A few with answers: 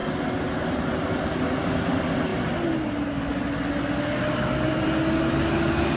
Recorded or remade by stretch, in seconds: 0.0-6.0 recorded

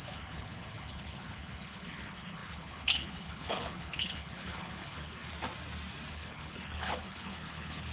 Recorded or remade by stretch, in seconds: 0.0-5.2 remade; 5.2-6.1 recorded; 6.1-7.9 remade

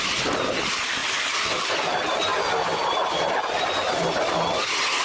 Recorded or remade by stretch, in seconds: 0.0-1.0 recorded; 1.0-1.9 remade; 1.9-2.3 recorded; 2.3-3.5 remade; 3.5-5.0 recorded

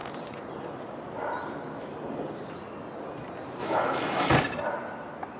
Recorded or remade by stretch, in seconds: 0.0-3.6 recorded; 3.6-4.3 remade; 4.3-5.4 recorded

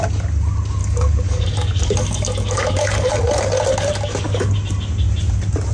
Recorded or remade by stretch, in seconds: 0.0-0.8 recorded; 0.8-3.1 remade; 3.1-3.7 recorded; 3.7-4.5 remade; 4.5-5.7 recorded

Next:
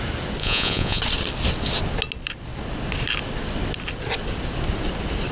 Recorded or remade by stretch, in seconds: 0.0-0.4 recorded; 0.4-1.0 remade; 1.0-5.3 recorded

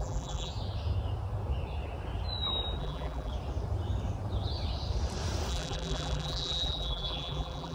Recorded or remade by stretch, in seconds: 0.0-0.5 remade; 0.5-2.8 recorded; 2.8-3.3 remade; 3.3-5.5 recorded; 5.5-7.7 remade

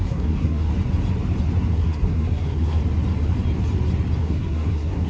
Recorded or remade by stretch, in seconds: 0.0-0.7 remade; 0.7-1.7 recorded; 1.7-2.8 remade; 2.8-4.2 recorded; 4.2-5.1 remade